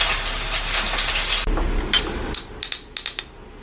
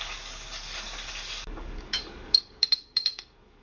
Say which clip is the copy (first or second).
second